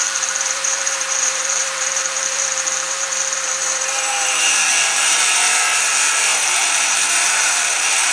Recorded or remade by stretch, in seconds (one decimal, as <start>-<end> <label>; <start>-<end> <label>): 0.0-8.1 remade